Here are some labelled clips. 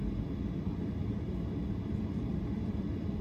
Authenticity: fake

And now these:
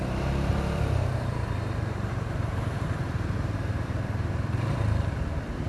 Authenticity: fake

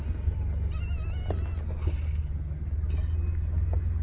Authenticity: real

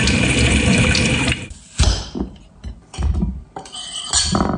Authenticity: fake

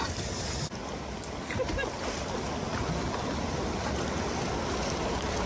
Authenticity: real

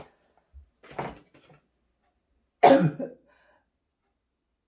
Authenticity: real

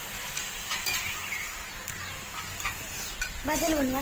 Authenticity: real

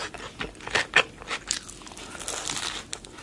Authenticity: real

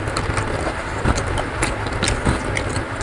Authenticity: real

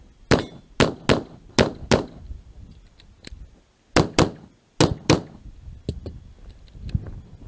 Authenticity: real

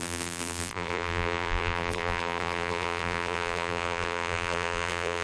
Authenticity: fake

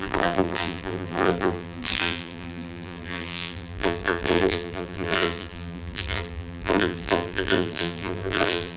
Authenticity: fake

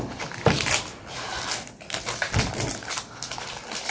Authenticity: fake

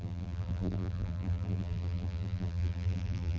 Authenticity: fake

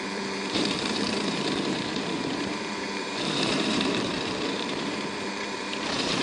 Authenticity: fake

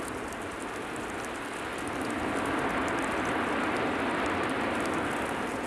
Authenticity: real